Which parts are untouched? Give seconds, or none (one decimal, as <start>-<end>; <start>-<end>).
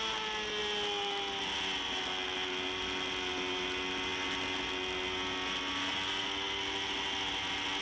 0.0-7.8